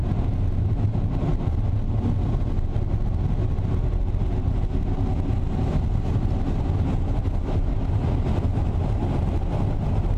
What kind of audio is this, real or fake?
real